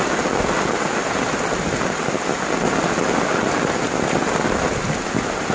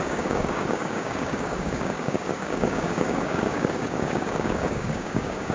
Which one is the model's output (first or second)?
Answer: second